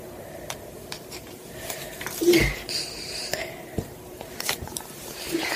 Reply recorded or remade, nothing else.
remade